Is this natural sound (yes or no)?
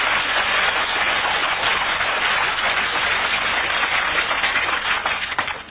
no